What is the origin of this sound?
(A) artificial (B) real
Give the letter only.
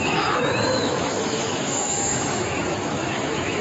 A